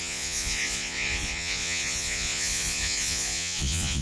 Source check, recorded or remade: remade